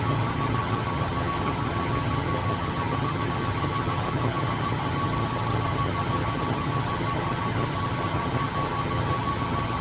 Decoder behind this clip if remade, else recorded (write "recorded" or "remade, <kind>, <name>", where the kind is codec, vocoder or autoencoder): remade, vocoder, HiFi-GAN